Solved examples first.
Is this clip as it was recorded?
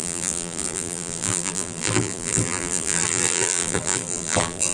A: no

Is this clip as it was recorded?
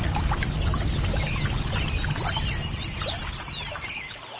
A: yes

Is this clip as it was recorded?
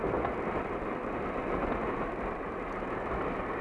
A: yes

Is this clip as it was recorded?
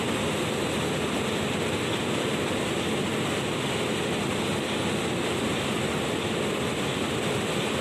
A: yes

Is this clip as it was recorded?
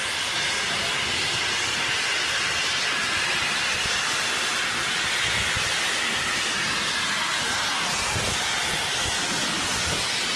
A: yes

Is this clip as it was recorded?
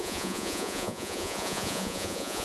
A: no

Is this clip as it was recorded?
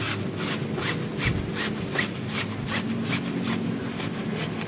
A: yes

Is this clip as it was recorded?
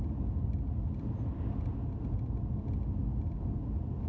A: yes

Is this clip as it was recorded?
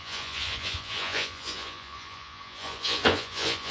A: no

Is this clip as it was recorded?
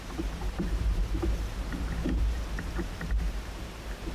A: no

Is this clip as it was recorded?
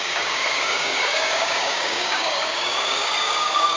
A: no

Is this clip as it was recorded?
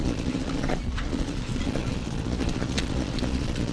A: no